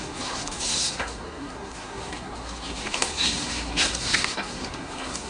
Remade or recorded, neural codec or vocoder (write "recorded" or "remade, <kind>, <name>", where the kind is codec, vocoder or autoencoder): remade, codec, SNAC